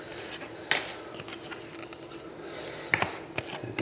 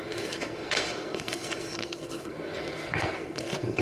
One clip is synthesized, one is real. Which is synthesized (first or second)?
second